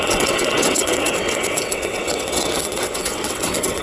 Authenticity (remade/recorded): remade